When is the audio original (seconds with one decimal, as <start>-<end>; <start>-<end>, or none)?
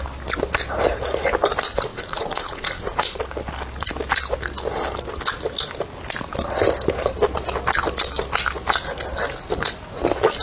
0.0-1.9; 3.2-10.4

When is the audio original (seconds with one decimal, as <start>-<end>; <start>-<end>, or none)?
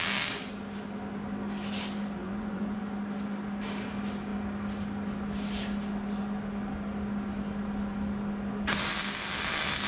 0.0-2.2; 2.8-9.9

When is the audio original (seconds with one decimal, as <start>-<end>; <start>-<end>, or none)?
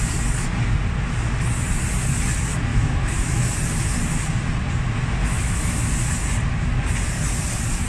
0.0-2.7; 3.4-5.2; 5.9-7.9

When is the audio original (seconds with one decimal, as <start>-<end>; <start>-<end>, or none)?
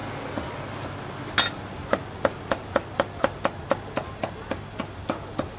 0.0-4.2; 4.8-5.6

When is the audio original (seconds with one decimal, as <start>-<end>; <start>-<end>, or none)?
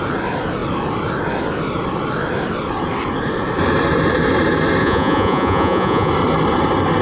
0.0-4.8; 6.1-7.0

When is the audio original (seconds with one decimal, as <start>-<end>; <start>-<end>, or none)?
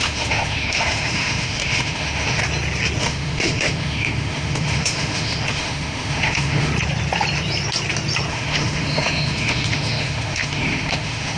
2.4-3.0; 6.7-8.3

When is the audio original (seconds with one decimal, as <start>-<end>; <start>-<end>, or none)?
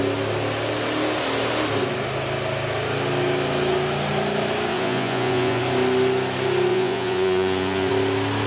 0.0-4.7; 5.6-6.7; 7.9-8.5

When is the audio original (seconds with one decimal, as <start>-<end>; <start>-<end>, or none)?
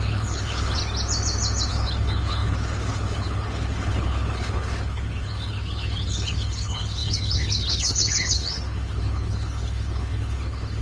0.8-1.7